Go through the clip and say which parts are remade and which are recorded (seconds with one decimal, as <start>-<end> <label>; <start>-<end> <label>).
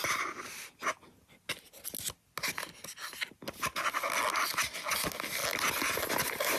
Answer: 0.0-6.6 recorded